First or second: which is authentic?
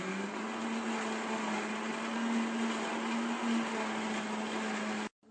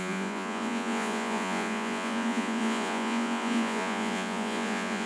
first